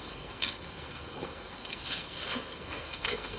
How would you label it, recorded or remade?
remade